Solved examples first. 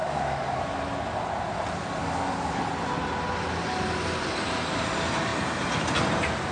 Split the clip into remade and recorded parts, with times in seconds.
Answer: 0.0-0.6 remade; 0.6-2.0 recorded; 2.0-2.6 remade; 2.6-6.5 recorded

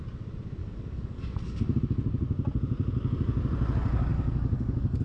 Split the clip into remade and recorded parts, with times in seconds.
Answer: 0.0-0.6 recorded; 0.6-1.6 remade; 1.6-4.1 recorded; 4.1-5.0 remade

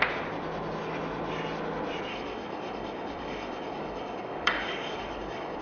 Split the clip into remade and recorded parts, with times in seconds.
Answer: 0.0-2.1 recorded; 2.1-5.6 remade

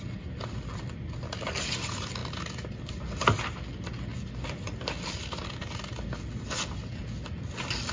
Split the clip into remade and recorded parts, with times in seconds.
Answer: 0.0-7.9 recorded